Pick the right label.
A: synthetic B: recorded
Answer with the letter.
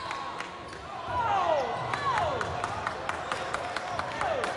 B